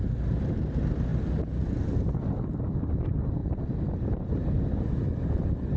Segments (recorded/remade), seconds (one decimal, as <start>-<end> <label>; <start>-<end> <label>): 0.0-1.1 remade; 1.1-2.7 recorded; 2.7-5.8 remade